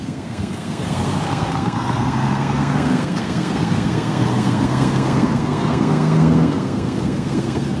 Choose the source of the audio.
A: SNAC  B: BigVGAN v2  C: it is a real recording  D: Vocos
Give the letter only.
A